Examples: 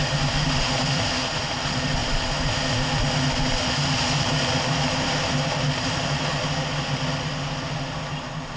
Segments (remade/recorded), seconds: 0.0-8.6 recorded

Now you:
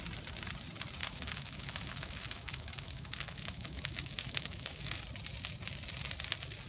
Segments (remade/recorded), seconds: 0.0-1.0 recorded; 1.0-5.0 remade; 5.0-6.7 recorded

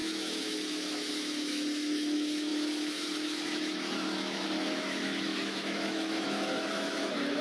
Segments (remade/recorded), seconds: 0.0-7.4 remade

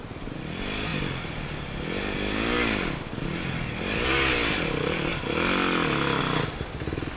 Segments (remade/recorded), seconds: 0.0-7.2 recorded

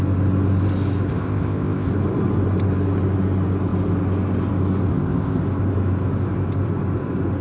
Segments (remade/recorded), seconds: 0.0-1.1 recorded; 1.1-1.9 remade; 1.9-4.9 recorded; 4.9-5.4 remade; 5.4-7.4 recorded

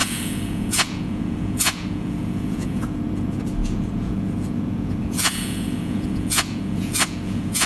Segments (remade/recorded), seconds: 0.0-7.7 remade